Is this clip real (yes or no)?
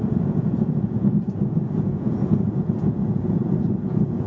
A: no